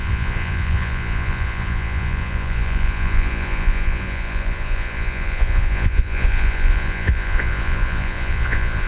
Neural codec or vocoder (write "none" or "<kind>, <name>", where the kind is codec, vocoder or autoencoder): vocoder, Vocos